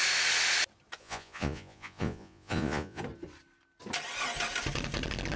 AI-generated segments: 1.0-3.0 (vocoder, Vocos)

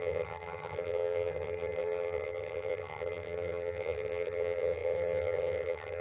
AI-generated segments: 0.0-6.0 (vocoder, HiFi-GAN)